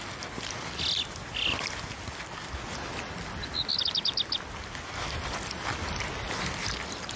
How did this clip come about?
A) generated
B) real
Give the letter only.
B